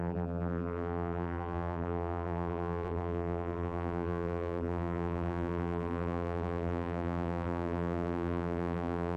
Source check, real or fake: fake